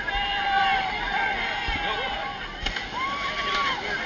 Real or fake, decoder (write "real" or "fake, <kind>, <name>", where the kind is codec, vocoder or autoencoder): fake, vocoder, BigVGAN v2